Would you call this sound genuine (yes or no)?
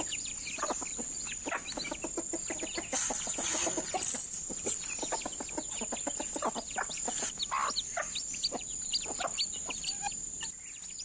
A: yes